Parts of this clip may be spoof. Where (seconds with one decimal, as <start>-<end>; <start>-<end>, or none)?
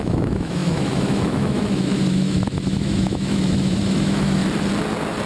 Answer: 0.0-4.4